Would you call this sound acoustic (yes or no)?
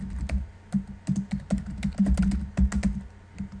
yes